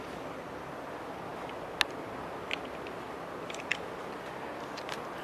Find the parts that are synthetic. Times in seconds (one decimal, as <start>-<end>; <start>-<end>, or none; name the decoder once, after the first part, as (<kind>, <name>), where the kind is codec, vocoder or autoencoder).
none